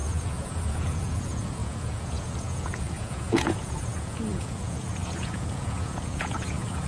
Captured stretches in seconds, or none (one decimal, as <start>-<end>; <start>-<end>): none

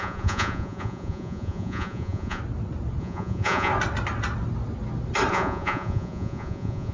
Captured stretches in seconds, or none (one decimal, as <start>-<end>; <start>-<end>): 2.4-3.0; 3.7-5.3